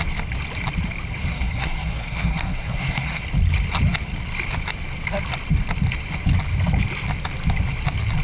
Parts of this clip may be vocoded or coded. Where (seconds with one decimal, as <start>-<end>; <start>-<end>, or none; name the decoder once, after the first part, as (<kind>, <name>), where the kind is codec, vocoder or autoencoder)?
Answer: 1.2-3.2 (codec, SNAC)